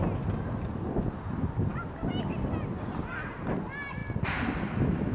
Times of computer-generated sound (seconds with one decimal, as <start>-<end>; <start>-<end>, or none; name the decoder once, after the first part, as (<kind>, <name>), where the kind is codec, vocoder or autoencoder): none